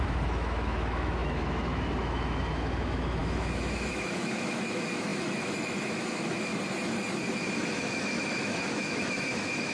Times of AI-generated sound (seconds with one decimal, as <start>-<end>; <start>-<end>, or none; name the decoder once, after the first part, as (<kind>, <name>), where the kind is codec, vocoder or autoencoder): 0.0-6.5 (autoencoder, DAC-VAE); 7.7-9.7